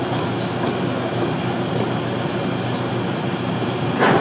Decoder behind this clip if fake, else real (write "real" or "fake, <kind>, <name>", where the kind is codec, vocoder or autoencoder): real